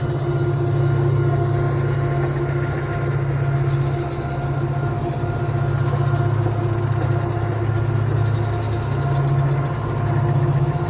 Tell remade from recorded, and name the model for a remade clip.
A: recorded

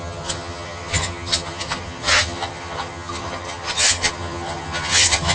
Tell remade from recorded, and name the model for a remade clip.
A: remade, vocoder, HiFi-GAN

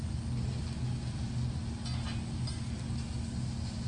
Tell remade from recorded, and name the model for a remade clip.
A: recorded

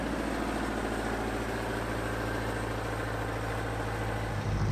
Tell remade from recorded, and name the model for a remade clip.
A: recorded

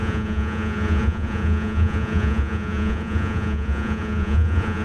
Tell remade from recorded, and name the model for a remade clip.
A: remade, vocoder, Vocos